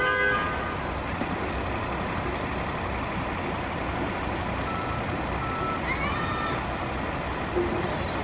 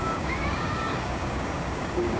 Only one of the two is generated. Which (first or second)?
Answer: second